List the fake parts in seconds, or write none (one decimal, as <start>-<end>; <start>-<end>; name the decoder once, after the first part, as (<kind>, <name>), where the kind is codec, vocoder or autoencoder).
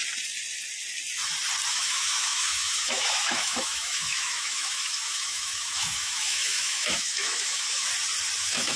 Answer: 1.7-7.9 (autoencoder, DAC-VAE); 8.4-8.8